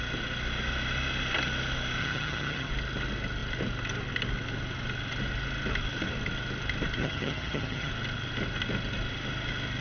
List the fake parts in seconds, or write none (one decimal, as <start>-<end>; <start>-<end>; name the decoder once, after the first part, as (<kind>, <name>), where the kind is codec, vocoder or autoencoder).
2.0-2.7 (vocoder, HiFi-GAN); 7.0-7.9